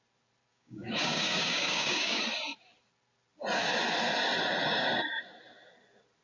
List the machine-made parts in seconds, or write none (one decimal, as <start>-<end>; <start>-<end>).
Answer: 0.5-2.2